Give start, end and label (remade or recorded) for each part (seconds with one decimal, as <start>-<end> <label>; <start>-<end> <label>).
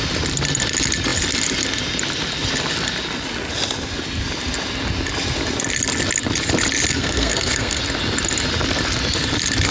0.0-6.9 recorded; 6.9-7.8 remade; 7.8-9.7 recorded